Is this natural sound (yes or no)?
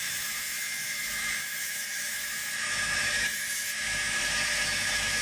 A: no